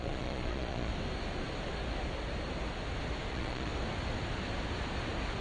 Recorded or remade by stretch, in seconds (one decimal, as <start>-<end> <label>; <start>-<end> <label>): 0.0-0.9 remade; 0.9-3.3 recorded; 3.3-3.7 remade; 3.7-5.4 recorded